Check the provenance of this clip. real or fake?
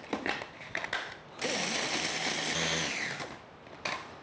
real